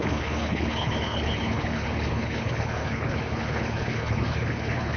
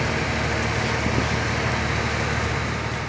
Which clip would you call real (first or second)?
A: second